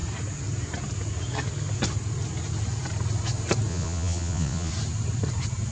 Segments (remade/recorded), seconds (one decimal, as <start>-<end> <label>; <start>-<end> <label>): 0.0-3.7 recorded; 3.7-4.7 remade; 4.7-5.7 recorded